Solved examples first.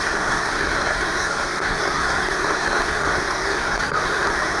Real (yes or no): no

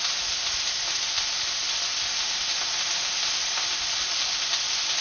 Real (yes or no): yes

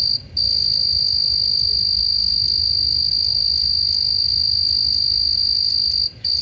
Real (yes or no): yes